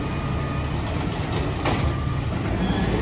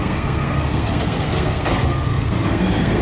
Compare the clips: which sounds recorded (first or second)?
first